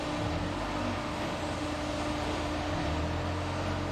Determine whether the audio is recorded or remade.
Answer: recorded